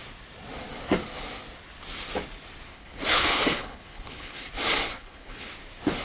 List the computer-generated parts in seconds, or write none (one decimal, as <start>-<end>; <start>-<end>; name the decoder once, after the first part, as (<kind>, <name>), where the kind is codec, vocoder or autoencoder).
2.7-4.5 (codec, HILCodec); 4.9-5.5